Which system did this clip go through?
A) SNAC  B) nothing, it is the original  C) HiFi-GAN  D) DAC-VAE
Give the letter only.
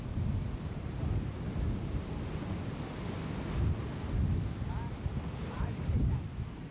B